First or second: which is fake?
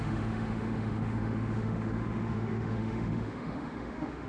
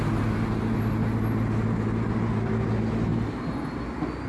first